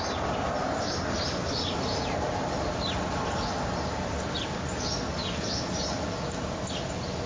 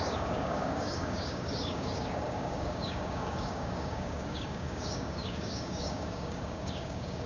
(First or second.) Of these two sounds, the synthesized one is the second